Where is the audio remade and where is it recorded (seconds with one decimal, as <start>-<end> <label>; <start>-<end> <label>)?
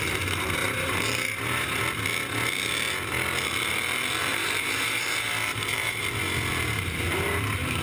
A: 0.0-0.6 recorded; 0.6-1.8 remade; 1.8-4.3 recorded; 4.3-6.0 remade; 6.0-7.8 recorded